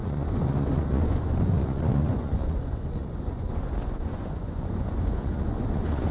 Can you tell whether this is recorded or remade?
remade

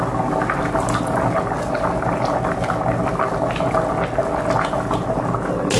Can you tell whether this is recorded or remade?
recorded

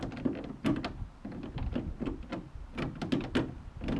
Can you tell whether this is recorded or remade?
recorded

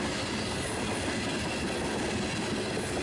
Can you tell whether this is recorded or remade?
recorded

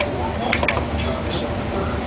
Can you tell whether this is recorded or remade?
recorded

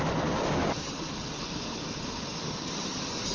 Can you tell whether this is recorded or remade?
recorded